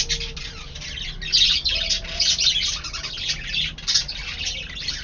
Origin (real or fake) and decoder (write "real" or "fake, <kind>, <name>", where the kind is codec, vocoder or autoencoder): real